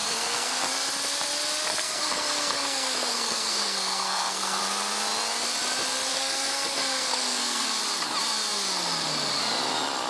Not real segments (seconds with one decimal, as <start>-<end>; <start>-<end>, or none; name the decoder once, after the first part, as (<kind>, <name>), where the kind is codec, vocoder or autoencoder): 0.0-0.7 (codec, SNAC); 1.7-4.6; 6.1-7.8